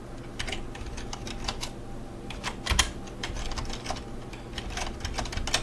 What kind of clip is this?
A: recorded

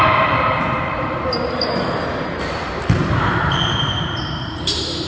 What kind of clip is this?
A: remade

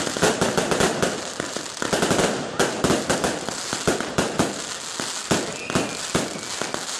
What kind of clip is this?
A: recorded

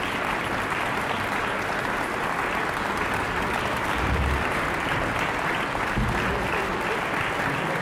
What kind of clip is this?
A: recorded